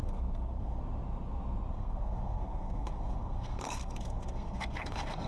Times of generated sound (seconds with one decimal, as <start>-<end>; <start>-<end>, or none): 0.0-0.8; 1.7-5.3